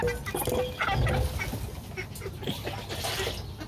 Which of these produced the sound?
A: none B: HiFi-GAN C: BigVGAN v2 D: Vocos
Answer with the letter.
A